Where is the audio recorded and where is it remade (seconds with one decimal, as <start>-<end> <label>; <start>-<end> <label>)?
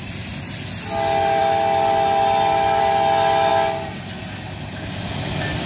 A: 0.0-5.7 recorded